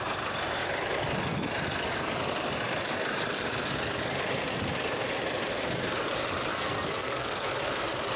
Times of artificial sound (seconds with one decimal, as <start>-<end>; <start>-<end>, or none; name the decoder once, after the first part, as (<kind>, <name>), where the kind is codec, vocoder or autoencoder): 6.5-7.5 (codec, SNAC)